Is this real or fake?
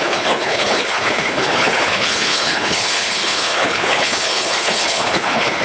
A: fake